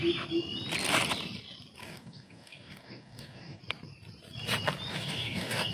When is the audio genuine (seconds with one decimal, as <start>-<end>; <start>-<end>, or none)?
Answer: 0.0-1.8; 3.6-4.9

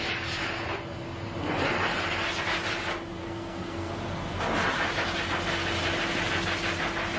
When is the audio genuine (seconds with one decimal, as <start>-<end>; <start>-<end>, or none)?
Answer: 0.0-3.2; 3.9-7.2

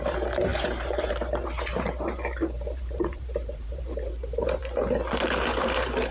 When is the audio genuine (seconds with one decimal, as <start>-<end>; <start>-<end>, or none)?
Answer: 4.6-5.2

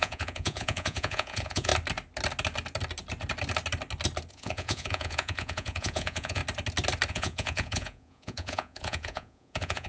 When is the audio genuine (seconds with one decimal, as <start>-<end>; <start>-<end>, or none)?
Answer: 1.7-4.3; 6.4-7.1

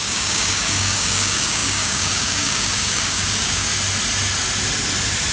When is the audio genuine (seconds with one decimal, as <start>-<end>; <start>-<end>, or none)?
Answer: 3.7-5.3

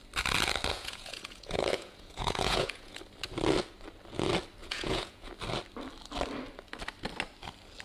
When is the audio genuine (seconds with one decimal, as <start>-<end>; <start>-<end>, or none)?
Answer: 0.0-0.7; 3.0-4.6; 5.3-7.8